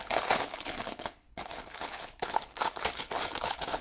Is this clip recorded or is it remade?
remade